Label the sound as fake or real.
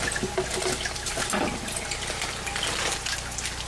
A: real